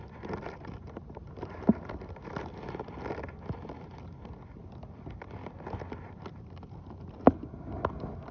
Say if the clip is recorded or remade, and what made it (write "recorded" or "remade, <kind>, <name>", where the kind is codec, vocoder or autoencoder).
recorded